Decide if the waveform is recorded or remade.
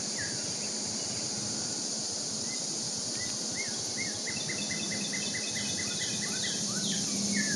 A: recorded